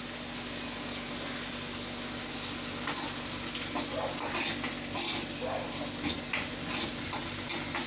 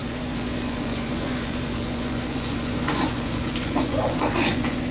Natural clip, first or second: first